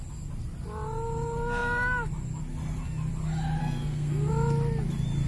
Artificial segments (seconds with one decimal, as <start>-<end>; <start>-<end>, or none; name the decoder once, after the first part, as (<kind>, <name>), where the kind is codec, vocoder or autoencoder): 3.6-4.3 (codec, SNAC)